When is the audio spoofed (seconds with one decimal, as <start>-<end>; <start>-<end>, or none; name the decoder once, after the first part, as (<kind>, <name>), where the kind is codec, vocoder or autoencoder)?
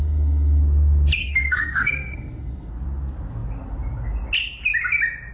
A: 0.0-0.6 (codec, SNAC); 1.2-2.7